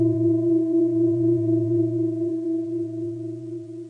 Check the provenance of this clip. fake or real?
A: fake